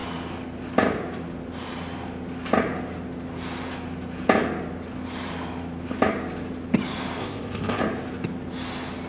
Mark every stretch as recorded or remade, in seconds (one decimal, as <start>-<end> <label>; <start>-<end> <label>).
0.0-7.2 recorded; 7.2-7.8 remade; 7.8-9.1 recorded